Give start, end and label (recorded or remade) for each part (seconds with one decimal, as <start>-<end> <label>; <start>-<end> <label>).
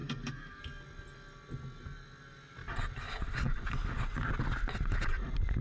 0.0-0.6 remade; 0.6-5.6 recorded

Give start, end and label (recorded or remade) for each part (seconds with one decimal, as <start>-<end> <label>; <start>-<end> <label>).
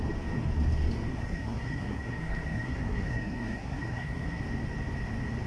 0.0-1.1 recorded; 1.1-4.4 remade; 4.4-5.5 recorded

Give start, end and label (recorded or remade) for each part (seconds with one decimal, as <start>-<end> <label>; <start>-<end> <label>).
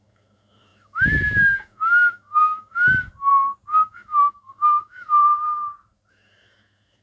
0.0-3.3 remade; 3.3-3.8 recorded; 3.8-5.2 remade; 5.2-6.1 recorded; 6.1-7.0 remade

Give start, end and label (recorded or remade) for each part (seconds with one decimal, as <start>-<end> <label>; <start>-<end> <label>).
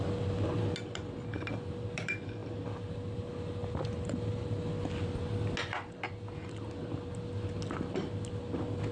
0.0-8.9 recorded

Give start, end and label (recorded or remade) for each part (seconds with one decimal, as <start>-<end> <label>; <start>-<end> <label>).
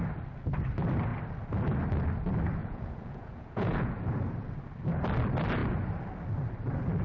0.0-2.6 recorded; 2.6-3.9 remade; 3.9-7.0 recorded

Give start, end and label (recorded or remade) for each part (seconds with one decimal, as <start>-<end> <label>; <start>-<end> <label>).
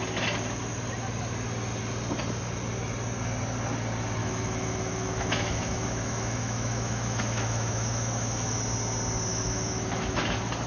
0.0-4.2 recorded; 4.2-8.6 remade; 8.6-9.3 recorded; 9.3-10.2 remade; 10.2-10.7 recorded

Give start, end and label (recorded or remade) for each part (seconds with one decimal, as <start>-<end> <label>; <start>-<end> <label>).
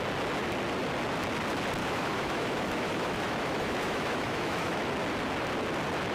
0.0-1.8 recorded; 1.8-4.9 remade; 4.9-6.1 recorded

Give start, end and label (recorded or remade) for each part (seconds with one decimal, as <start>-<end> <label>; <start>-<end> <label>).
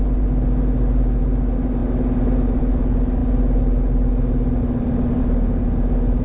0.0-6.2 recorded